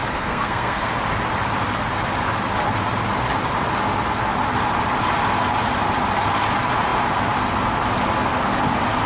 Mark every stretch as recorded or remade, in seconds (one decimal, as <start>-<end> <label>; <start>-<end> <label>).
0.0-0.9 remade; 0.9-9.1 recorded

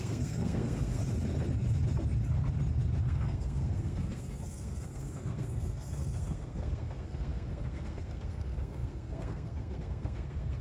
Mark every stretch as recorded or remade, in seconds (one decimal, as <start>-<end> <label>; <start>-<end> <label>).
0.0-1.0 remade; 1.0-3.0 recorded; 3.0-10.6 remade

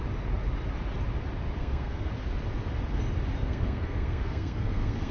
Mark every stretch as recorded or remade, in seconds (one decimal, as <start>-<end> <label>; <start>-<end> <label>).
0.0-1.6 recorded; 1.6-2.1 remade; 2.1-3.4 recorded; 3.4-5.1 remade